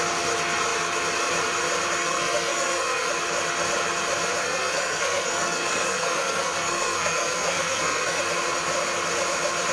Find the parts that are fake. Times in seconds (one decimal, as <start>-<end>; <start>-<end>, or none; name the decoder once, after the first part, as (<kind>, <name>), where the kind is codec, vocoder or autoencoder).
2.0-3.1 (codec, SNAC); 4.4-8.2